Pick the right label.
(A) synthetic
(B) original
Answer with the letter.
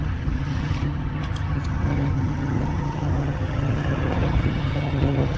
A